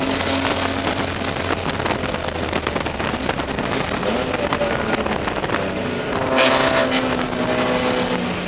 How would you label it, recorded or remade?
recorded